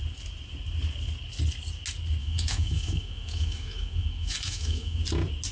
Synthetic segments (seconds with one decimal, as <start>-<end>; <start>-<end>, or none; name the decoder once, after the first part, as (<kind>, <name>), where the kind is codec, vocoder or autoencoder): 2.2-5.0 (autoencoder, DAC-VAE)